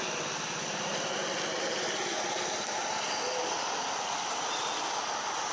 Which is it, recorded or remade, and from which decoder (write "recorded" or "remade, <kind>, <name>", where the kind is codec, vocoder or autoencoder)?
recorded